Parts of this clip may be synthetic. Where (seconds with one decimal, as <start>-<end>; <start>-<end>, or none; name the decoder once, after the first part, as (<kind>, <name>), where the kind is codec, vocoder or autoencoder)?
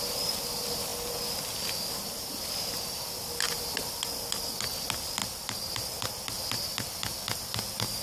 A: 6.7-7.2 (vocoder, BigVGAN v2)